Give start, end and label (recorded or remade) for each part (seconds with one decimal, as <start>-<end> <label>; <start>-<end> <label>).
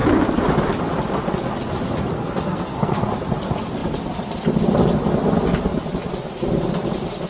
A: 0.0-2.1 recorded; 2.1-3.0 remade; 3.0-7.3 recorded